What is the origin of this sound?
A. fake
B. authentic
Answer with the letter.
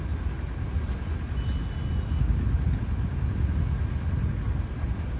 B